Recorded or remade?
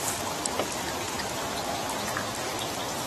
recorded